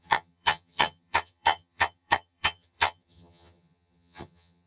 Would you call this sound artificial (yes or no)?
yes